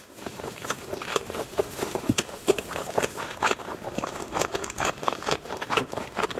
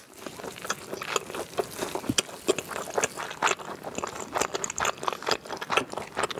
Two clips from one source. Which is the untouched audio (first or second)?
second